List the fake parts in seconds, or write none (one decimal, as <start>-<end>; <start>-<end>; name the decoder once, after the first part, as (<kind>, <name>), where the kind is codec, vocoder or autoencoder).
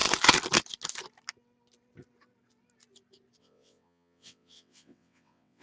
3.4-5.6 (vocoder, WaveNeXt)